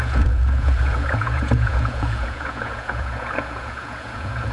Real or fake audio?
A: fake